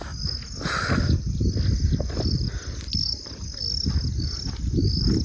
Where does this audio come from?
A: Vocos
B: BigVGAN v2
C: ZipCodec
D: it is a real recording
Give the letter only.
D